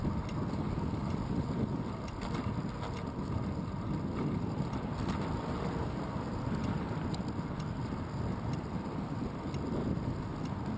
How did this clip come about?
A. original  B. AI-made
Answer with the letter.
A